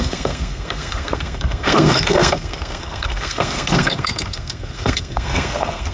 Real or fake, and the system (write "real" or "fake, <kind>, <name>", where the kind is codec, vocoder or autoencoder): fake, codec, SNAC